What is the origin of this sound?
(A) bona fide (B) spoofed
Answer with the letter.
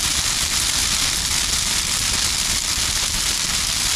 A